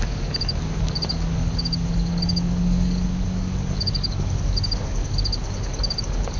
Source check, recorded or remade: remade